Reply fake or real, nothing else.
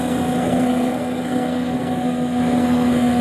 fake